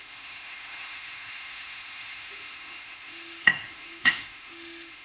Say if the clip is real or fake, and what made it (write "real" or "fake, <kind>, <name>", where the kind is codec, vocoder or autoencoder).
fake, autoencoder, DAC-VAE